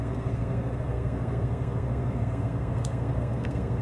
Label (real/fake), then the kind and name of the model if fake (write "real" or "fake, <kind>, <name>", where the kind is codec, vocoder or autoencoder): fake, codec, SNAC